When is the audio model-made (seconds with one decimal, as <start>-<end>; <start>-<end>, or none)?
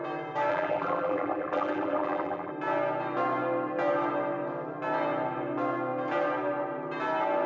0.5-2.5